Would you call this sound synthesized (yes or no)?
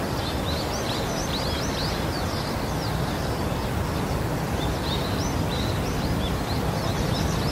no